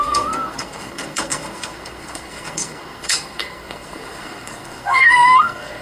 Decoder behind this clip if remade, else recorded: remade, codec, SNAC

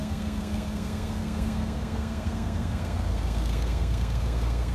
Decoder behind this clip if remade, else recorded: remade, codec, SNAC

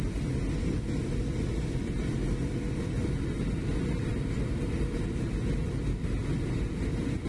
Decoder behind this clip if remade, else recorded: recorded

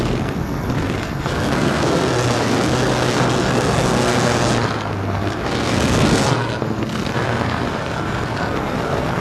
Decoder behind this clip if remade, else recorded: remade, codec, SNAC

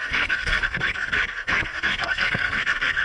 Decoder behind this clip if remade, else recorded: remade, codec, SNAC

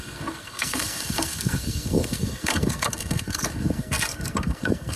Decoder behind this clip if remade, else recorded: remade, codec, SNAC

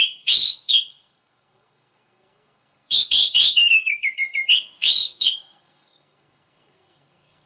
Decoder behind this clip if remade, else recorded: remade, codec, SNAC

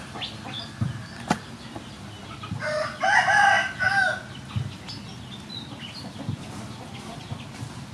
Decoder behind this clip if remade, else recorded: recorded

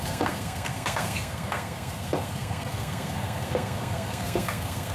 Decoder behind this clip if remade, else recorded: remade, codec, SNAC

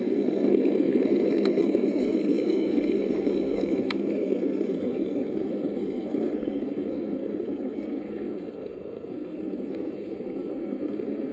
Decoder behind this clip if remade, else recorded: remade, codec, SNAC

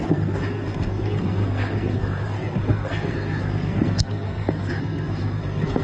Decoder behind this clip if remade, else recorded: remade, codec, SNAC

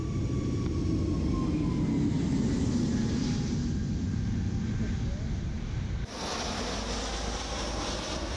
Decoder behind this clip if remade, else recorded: recorded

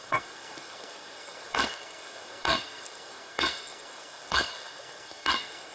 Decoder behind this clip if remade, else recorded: remade, codec, SNAC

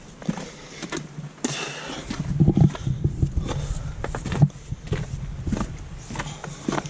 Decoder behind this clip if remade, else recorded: recorded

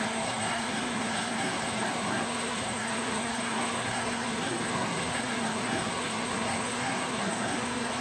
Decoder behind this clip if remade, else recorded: remade, codec, SNAC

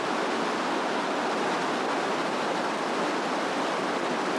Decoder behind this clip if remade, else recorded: recorded